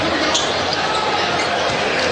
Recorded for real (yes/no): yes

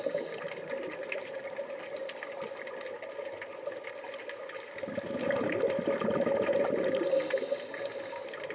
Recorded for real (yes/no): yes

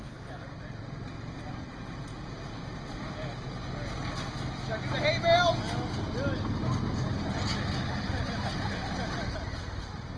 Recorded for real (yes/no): yes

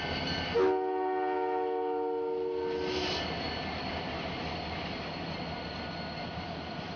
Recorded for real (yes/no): yes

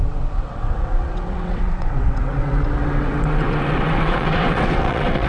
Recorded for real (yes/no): no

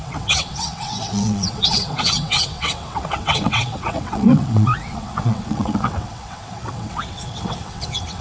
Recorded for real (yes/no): no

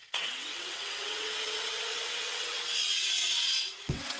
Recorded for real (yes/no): no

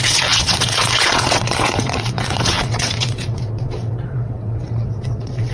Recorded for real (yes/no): no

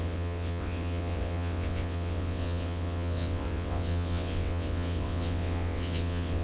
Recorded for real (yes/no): no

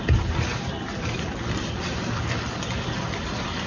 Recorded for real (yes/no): yes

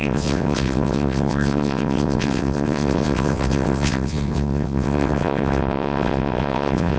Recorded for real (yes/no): no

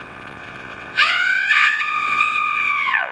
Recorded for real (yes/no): no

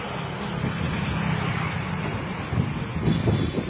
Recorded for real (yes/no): yes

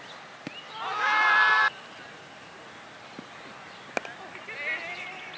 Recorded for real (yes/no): yes